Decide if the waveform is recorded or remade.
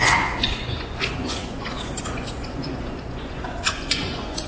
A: remade